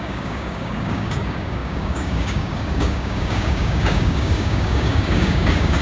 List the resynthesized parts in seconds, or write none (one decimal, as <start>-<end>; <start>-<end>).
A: 0.0-5.8